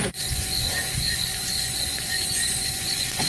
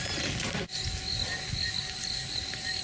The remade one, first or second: first